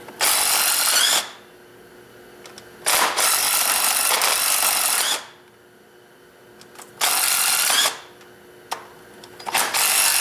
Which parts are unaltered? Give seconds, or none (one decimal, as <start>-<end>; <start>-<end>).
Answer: 0.0-10.2